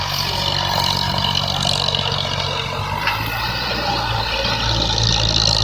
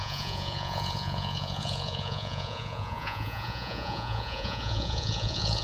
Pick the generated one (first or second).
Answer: second